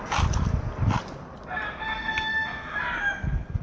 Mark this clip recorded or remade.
recorded